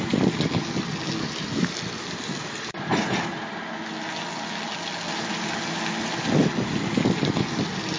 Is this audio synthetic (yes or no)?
no